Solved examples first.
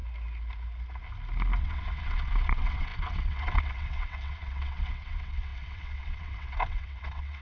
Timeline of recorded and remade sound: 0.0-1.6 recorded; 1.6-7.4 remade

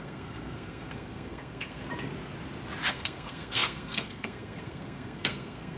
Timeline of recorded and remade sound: 0.0-1.8 remade; 1.8-2.9 recorded; 2.9-5.8 remade